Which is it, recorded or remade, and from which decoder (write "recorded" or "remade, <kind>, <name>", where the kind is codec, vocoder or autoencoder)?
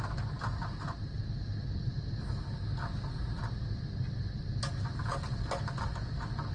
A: recorded